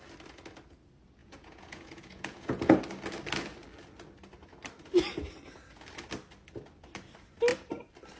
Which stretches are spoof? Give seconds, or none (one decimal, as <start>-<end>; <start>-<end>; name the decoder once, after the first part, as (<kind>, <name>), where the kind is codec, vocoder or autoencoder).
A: 1.2-2.8 (vocoder, Vocos)